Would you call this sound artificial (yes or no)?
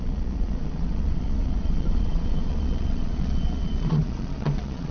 yes